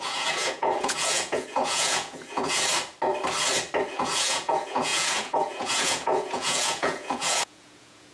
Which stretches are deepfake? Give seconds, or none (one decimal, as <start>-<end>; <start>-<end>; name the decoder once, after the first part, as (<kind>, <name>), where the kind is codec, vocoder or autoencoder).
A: 0.0-2.7 (vocoder, Vocos); 3.9-8.1